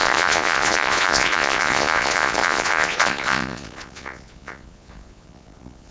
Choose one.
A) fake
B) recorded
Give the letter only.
A